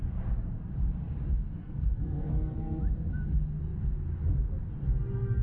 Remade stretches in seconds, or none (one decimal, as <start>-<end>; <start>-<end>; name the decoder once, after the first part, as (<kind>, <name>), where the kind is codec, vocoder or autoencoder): 1.6-2.8 (codec, SNAC)